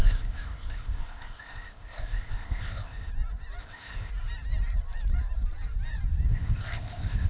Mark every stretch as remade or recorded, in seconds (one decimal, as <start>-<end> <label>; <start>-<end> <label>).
0.0-3.1 remade; 3.1-3.6 recorded; 3.6-4.1 remade; 4.1-6.3 recorded; 6.3-7.3 remade